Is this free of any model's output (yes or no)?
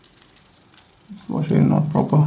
yes